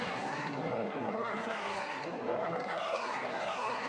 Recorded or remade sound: remade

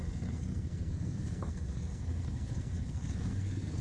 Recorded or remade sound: remade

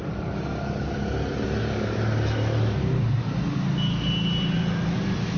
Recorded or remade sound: recorded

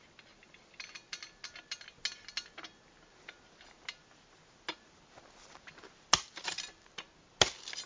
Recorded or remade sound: recorded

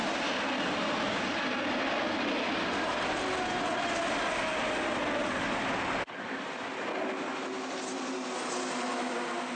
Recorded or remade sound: recorded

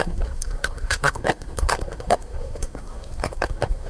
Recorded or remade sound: remade